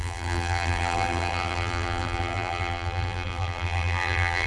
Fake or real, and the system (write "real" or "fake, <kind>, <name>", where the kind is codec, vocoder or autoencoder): fake, vocoder, BigVGAN v2